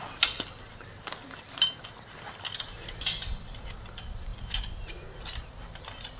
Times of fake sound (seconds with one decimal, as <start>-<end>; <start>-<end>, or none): none